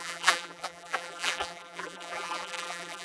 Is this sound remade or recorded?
remade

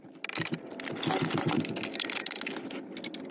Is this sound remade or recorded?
recorded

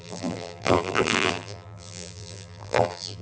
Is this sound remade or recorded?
remade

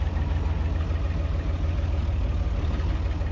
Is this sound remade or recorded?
recorded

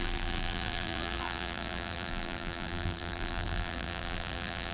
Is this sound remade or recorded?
remade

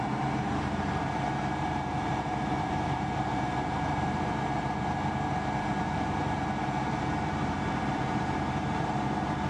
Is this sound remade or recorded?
remade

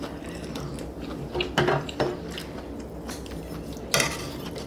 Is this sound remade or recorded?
recorded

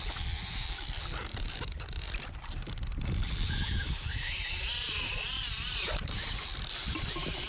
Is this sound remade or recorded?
remade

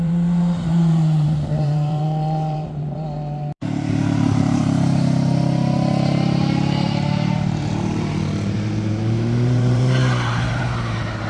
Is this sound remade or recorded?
remade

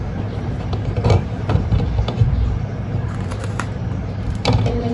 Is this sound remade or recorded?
remade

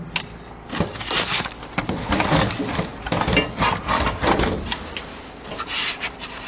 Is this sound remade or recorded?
recorded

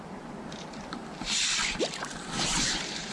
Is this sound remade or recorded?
remade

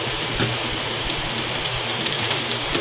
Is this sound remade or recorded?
remade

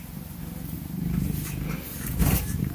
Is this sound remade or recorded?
remade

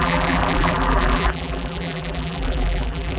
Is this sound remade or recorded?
remade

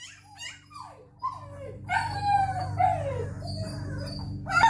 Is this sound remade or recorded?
remade